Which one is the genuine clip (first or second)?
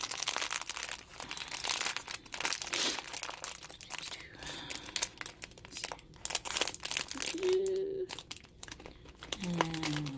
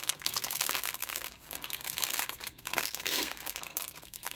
first